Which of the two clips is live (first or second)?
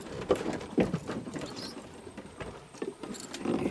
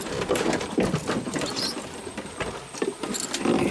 second